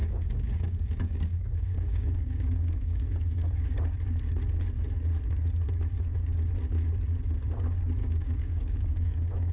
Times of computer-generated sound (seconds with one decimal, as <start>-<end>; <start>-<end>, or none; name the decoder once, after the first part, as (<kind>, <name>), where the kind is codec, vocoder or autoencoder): 0.0-3.7 (codec, DAC); 8.0-9.5